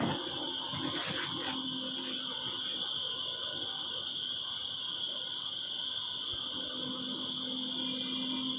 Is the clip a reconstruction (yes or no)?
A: no